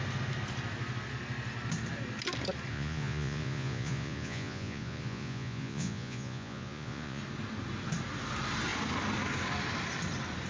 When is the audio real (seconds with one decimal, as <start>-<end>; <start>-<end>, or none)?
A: 0.0-2.7; 7.2-10.5